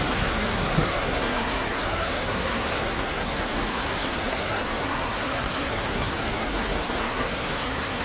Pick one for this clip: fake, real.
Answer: fake